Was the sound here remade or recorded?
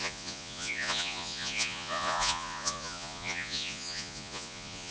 remade